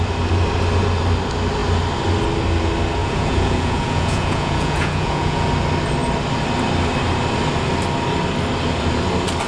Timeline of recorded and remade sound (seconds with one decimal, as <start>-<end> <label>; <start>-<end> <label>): 0.0-3.0 recorded; 3.0-5.5 remade; 5.5-9.5 recorded